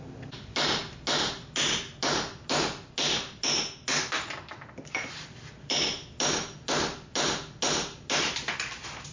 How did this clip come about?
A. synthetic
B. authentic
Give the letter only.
B